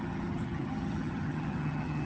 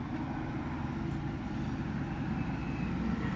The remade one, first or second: first